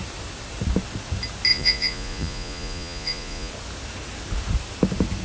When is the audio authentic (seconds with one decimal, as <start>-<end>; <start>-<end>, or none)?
0.0-1.5; 3.5-5.2